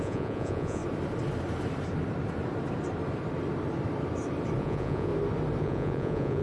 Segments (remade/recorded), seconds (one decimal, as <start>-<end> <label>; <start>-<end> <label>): 0.0-0.8 remade; 0.8-4.6 recorded; 4.6-5.1 remade; 5.1-5.6 recorded; 5.6-6.4 remade